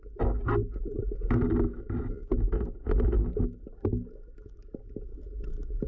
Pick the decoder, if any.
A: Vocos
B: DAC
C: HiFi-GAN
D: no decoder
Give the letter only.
D